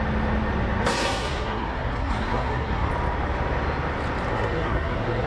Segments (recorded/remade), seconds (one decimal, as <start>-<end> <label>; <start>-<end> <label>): 0.0-0.8 recorded; 0.8-2.9 remade; 2.9-4.3 recorded; 4.3-5.3 remade